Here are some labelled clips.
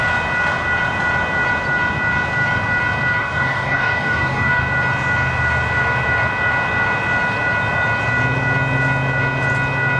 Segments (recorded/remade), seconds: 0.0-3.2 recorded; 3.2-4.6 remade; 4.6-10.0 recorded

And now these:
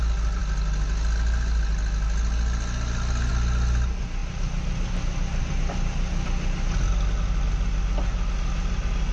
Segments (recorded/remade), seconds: 0.0-9.1 recorded

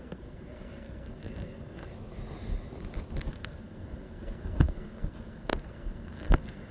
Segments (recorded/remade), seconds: 0.0-1.9 remade; 1.9-3.3 recorded; 3.3-6.7 remade

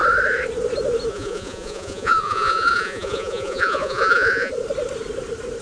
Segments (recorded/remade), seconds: 0.0-1.1 recorded; 1.1-4.5 remade; 4.5-5.6 recorded

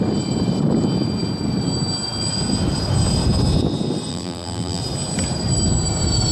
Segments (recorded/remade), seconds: 0.0-4.1 recorded; 4.1-4.8 remade; 4.8-6.3 recorded

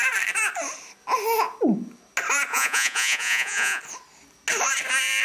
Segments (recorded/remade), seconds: 0.0-2.5 recorded; 2.5-3.8 remade; 3.8-5.2 recorded

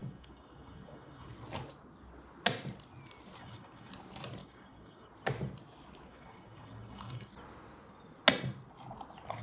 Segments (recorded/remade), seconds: 0.0-1.3 remade; 1.3-3.4 recorded; 3.4-3.9 remade; 3.9-4.4 recorded; 4.4-5.1 remade; 5.1-6.1 recorded; 6.1-7.3 remade; 7.3-9.4 recorded